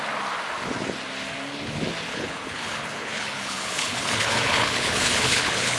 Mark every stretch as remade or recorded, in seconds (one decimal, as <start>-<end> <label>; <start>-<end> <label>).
0.0-2.1 recorded; 2.1-5.8 remade

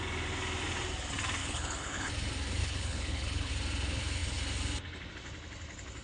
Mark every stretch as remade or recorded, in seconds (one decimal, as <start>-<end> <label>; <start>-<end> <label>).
0.0-1.4 recorded; 1.4-2.1 remade; 2.1-2.6 recorded; 2.6-3.5 remade; 3.5-6.0 recorded

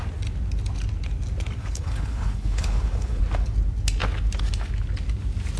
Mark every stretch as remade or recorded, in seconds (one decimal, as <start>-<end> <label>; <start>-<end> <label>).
0.0-1.6 recorded; 1.6-3.2 remade; 3.2-5.6 recorded

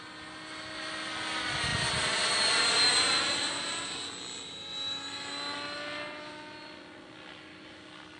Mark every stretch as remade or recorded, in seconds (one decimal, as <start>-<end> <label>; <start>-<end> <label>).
0.0-8.2 recorded

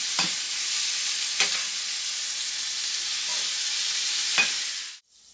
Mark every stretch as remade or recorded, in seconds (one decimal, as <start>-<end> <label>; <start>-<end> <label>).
0.0-5.3 recorded

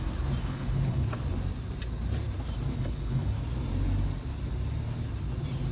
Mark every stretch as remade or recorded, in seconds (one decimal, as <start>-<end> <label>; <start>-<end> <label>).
0.0-0.4 recorded; 0.4-1.0 remade; 1.0-2.7 recorded; 2.7-3.4 remade; 3.4-5.7 recorded

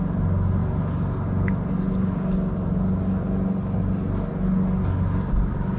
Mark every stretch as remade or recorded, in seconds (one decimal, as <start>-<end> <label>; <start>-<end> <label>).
0.0-5.8 recorded

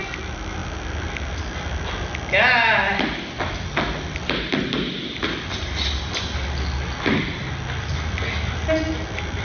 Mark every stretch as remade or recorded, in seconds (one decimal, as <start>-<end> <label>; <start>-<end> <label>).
0.0-9.4 recorded